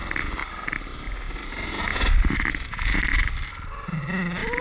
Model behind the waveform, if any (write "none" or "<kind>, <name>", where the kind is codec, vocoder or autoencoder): none